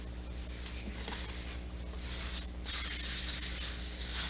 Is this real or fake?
real